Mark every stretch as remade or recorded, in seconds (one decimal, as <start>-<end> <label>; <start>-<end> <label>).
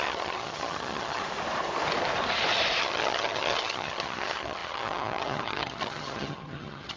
0.0-1.2 remade; 1.2-2.8 recorded; 2.8-7.0 remade